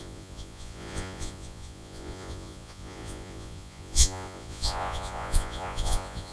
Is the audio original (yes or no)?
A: no